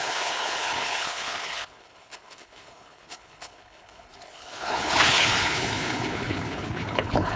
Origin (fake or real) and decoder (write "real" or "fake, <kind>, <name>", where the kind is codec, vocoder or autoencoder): fake, codec, HILCodec